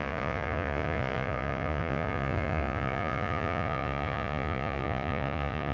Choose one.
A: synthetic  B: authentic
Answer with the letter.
A